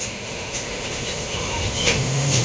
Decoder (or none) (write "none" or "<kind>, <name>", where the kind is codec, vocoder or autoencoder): autoencoder, DAC-VAE